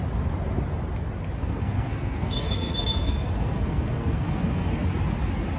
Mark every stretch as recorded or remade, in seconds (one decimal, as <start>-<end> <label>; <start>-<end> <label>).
0.0-1.4 recorded; 1.4-4.8 remade; 4.8-5.6 recorded